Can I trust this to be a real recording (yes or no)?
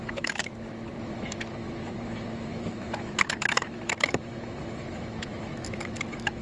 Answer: no